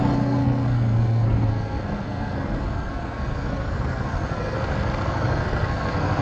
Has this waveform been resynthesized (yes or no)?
yes